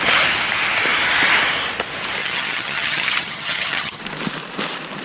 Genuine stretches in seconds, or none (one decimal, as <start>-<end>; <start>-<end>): 0.0-2.2; 4.0-5.0